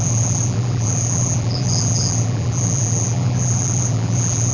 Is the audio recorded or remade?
remade